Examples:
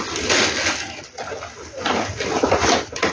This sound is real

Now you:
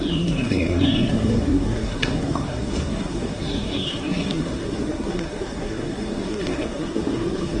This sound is fake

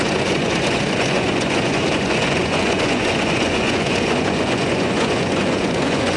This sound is fake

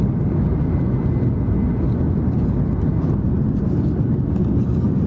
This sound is real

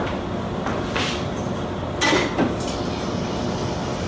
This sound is real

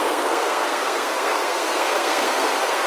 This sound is fake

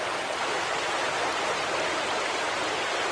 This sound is fake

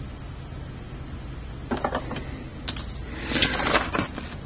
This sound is real